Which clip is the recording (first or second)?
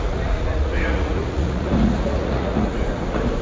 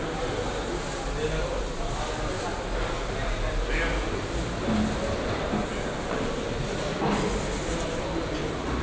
second